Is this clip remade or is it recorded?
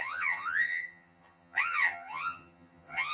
remade